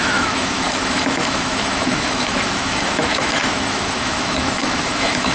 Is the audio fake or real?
fake